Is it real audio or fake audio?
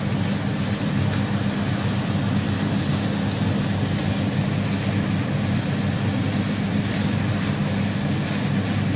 real